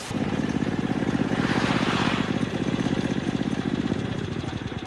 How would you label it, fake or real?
fake